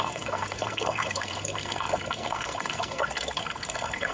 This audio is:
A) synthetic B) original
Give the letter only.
A